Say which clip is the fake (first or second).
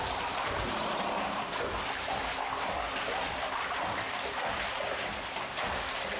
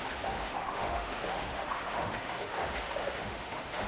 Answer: second